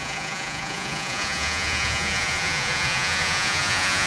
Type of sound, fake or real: fake